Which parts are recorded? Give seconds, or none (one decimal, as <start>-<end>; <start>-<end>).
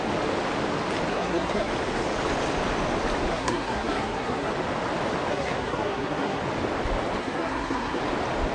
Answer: 0.0-1.1; 1.7-3.3; 4.5-5.3; 6.4-7.2; 8.0-8.5